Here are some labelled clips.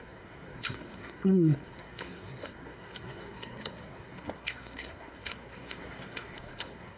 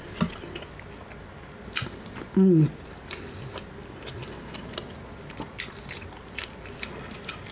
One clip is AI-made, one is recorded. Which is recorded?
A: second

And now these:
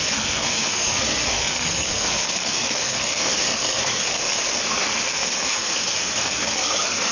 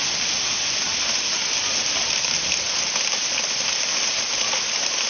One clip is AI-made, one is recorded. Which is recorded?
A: second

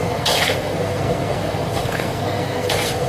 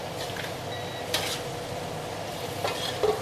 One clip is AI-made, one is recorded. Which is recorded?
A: second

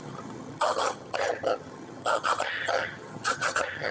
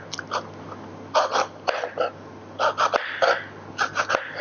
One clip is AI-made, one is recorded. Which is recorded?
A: second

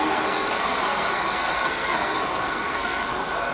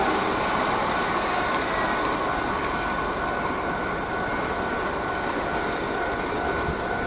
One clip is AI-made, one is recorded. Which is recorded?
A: second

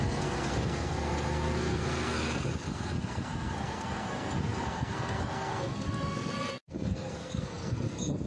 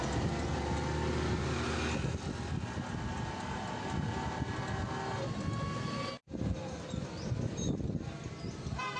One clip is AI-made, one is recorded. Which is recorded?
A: second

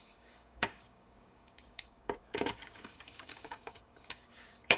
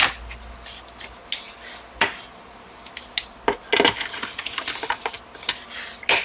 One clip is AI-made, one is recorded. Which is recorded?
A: second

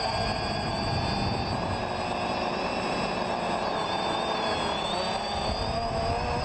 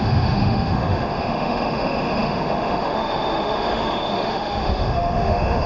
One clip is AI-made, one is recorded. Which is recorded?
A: first